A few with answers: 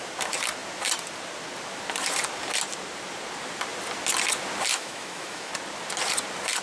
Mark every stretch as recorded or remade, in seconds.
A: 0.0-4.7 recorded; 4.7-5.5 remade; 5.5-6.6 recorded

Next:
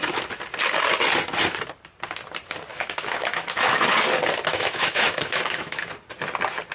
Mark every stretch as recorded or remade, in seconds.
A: 0.0-2.7 recorded; 2.7-3.8 remade; 3.8-4.5 recorded; 4.5-5.9 remade; 5.9-6.7 recorded

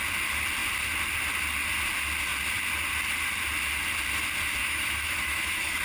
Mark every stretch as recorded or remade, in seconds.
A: 0.0-4.6 recorded; 4.6-5.8 remade

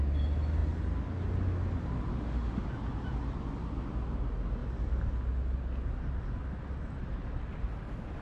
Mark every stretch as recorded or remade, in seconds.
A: 0.0-2.1 recorded; 2.1-2.7 remade; 2.7-8.2 recorded

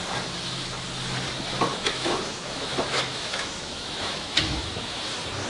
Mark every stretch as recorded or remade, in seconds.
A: 0.0-1.7 recorded; 1.7-5.0 remade; 5.0-5.5 recorded

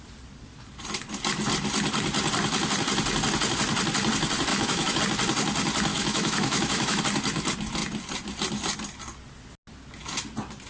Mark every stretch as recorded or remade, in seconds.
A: 0.0-4.5 recorded; 4.5-5.0 remade; 5.0-5.9 recorded; 5.9-7.0 remade; 7.0-10.7 recorded

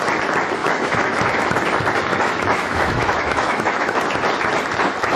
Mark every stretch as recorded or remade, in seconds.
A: 0.0-0.6 recorded; 0.6-1.2 remade; 1.2-2.1 recorded; 2.1-4.0 remade; 4.0-5.2 recorded